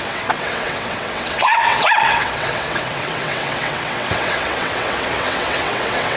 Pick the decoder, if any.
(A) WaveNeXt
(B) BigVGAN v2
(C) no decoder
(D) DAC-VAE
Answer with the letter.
A